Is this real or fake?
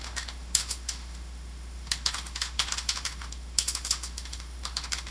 fake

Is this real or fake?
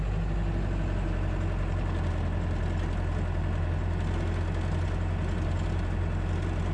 real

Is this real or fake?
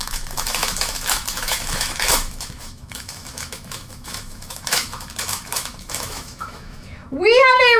fake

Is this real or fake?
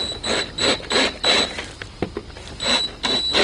real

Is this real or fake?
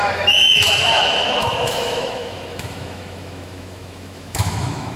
fake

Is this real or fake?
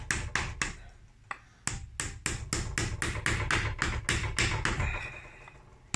real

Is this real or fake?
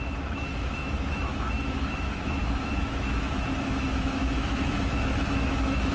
fake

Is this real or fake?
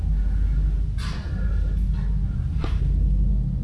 real